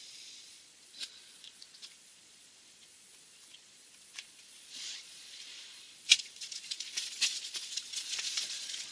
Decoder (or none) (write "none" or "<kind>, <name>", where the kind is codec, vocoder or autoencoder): vocoder, Vocos